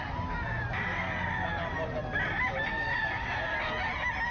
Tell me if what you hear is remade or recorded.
recorded